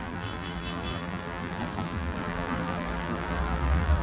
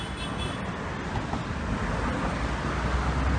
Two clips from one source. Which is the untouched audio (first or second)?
second